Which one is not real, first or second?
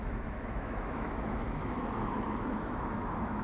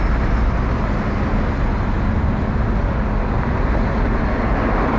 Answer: first